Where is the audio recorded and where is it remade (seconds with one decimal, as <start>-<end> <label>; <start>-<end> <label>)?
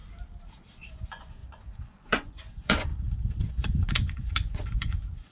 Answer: 0.0-0.9 recorded; 0.9-2.9 remade; 2.9-3.5 recorded; 3.5-5.3 remade